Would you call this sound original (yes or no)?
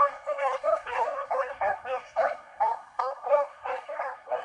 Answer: no